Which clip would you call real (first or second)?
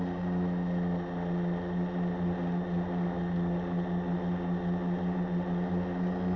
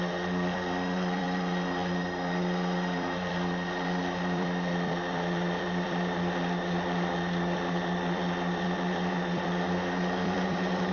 first